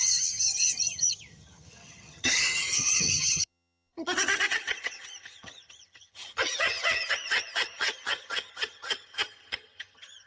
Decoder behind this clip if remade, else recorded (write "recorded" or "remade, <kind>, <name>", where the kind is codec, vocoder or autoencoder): remade, vocoder, HiFi-GAN